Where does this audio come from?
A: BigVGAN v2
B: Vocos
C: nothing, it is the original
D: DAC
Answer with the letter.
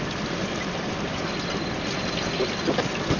C